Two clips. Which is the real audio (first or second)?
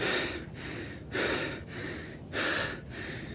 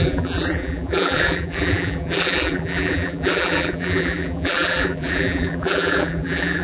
first